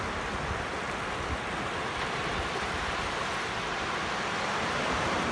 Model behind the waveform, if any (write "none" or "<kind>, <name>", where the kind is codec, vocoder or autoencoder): none